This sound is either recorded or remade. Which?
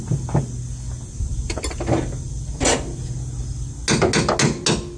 recorded